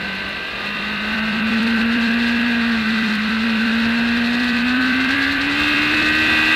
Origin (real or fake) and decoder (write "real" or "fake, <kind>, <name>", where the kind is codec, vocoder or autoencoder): fake, vocoder, BigVGAN v2